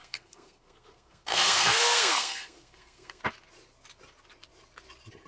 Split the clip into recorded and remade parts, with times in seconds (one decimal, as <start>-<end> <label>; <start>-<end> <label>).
0.0-3.2 remade; 3.2-5.3 recorded